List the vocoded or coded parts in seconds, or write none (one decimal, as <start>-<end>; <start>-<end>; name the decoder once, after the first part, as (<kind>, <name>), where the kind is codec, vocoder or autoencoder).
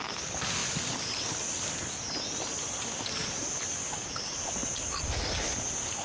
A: none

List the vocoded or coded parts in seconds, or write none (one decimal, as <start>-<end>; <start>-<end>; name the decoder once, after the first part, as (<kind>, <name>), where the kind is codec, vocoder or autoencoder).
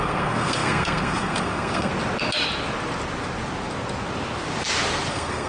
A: 0.0-1.9 (codec, SNAC); 5.1-5.5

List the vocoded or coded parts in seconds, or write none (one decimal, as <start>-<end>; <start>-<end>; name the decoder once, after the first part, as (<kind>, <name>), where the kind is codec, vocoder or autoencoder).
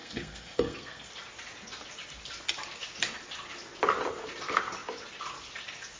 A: 0.0-1.1 (codec, SNAC)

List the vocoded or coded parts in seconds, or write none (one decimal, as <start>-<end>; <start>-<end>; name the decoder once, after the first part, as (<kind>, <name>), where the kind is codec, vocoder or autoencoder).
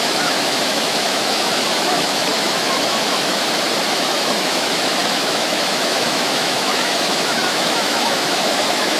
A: 0.0-3.4 (autoencoder, DAC-VAE); 3.9-9.0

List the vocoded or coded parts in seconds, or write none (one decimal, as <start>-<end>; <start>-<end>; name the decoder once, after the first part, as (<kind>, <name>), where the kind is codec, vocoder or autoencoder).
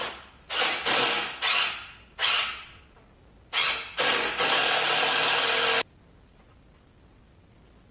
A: 2.2-2.8 (vocoder, WaveNeXt)